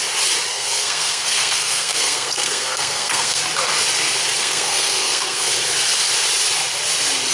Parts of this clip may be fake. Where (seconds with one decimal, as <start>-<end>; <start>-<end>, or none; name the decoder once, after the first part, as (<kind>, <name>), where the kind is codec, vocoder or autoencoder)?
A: 0.5-3.4 (codec, SNAC); 4.4-5.5